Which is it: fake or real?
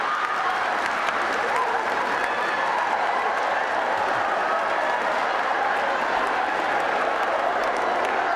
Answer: real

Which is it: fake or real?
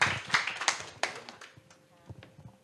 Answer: real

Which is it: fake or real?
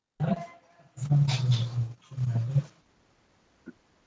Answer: real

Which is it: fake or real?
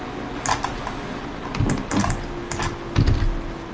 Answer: real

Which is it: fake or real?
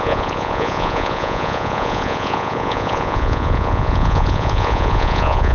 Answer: fake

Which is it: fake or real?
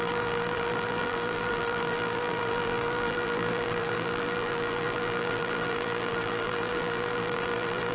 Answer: fake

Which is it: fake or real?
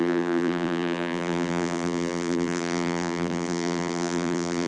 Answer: fake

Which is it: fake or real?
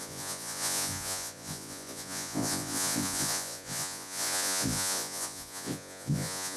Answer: fake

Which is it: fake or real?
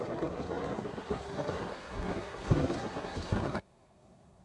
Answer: fake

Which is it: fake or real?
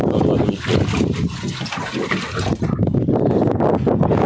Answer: real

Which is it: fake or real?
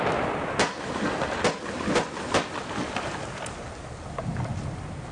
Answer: real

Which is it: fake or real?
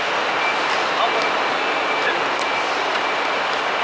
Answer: real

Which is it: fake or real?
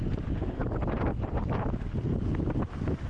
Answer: real